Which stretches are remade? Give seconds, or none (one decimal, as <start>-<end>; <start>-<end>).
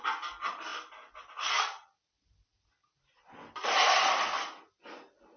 none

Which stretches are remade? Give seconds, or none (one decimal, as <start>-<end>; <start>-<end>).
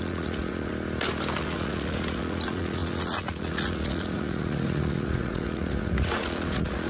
0.0-0.7; 1.4-6.9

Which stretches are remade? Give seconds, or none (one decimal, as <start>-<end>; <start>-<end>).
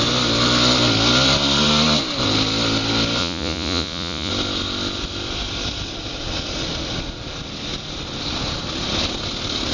3.2-4.3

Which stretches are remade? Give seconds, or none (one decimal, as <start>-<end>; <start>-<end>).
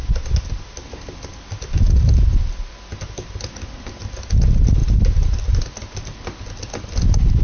none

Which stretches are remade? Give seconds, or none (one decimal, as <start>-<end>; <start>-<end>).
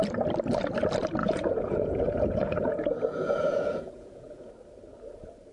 1.2-4.5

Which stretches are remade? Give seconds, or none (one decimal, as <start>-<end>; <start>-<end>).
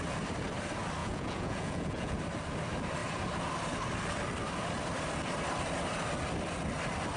1.0-2.2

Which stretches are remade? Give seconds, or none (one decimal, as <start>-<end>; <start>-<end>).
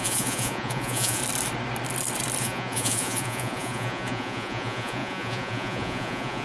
0.0-1.2; 2.4-6.4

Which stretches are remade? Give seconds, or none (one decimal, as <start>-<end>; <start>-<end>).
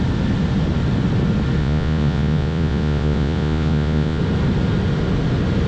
1.6-4.2